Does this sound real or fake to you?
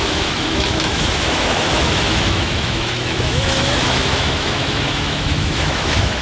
fake